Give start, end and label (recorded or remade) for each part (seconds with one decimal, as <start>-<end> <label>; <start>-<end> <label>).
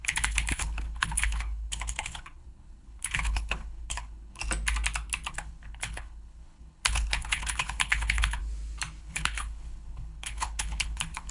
0.0-4.4 remade; 4.4-5.3 recorded; 5.3-8.4 remade; 8.4-9.0 recorded; 9.0-11.3 remade